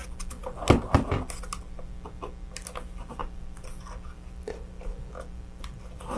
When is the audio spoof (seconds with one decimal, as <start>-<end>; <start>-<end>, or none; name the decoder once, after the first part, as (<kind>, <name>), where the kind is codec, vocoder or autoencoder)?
none